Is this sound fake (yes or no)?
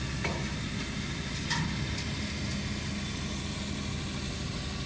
no